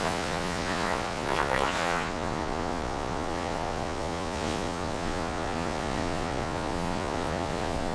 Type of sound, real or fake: fake